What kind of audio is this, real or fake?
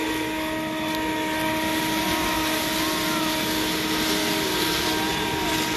real